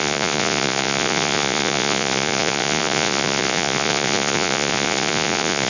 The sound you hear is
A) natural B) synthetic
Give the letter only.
B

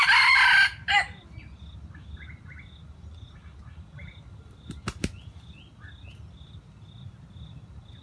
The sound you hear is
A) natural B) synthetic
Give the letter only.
A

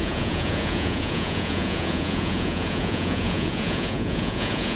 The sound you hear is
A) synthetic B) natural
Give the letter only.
A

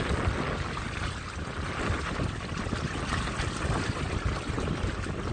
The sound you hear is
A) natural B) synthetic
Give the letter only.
A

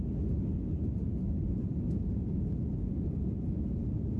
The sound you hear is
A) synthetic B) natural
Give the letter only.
B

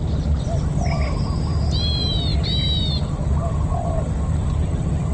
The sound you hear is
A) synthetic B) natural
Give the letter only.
B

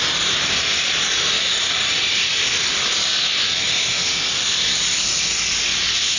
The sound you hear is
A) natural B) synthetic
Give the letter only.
A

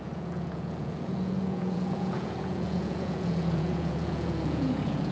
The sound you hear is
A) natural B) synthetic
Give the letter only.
B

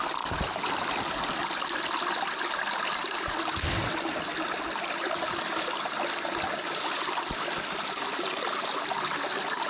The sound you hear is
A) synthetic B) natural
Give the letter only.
B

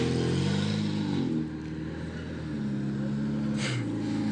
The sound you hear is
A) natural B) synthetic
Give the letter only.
A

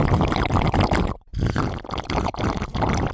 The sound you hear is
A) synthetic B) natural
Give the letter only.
B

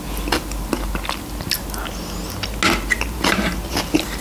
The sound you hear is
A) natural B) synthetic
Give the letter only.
A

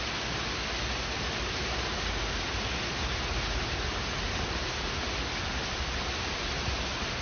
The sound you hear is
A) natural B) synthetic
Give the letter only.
A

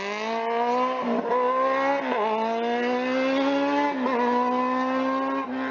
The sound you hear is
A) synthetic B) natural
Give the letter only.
B